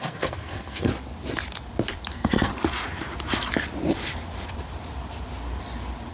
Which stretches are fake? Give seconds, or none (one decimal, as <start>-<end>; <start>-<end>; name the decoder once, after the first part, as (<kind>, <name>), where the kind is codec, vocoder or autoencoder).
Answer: 0.0-0.9 (codec, SNAC); 2.1-2.5